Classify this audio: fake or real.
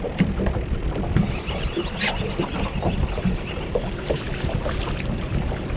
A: fake